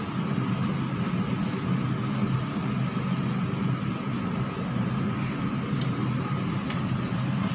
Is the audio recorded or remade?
recorded